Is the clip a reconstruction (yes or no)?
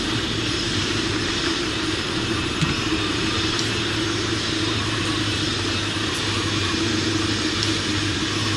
yes